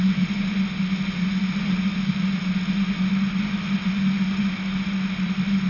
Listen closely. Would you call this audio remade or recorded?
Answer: recorded